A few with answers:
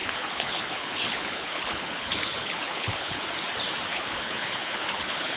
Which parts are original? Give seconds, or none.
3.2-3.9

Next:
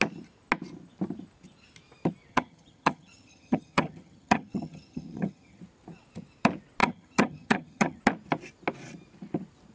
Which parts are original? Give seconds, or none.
0.0-2.3; 5.6-6.8; 8.0-9.7

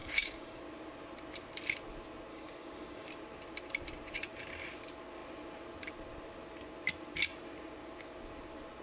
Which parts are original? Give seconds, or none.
0.6-2.3; 3.1-8.8

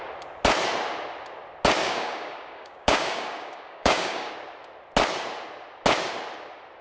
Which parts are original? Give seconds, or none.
0.0-1.8; 4.3-6.8

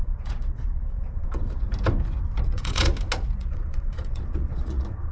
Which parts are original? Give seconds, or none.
1.7-2.4; 2.9-3.4

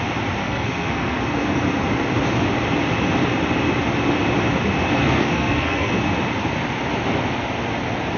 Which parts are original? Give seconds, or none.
0.0-0.4; 1.2-5.0; 5.9-8.2

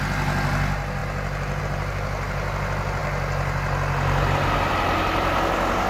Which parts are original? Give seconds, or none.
0.0-5.9